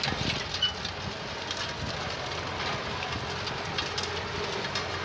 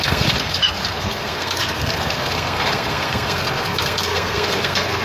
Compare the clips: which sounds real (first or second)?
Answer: first